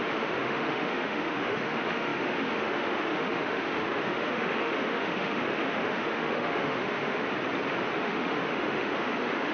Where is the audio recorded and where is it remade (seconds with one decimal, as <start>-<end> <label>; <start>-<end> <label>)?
0.0-7.2 remade; 7.2-8.0 recorded; 8.0-9.5 remade